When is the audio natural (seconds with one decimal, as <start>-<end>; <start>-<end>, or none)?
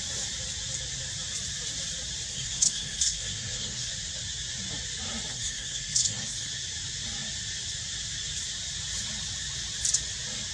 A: 0.0-2.3; 3.9-5.3; 6.5-10.5